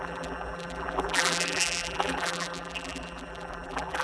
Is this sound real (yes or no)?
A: no